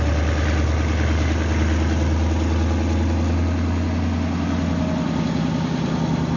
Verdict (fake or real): real